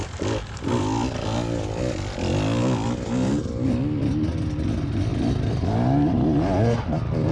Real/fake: real